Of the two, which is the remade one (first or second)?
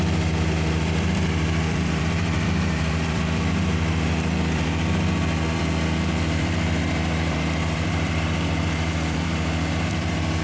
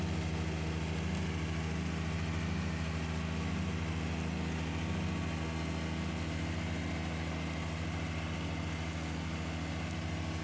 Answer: first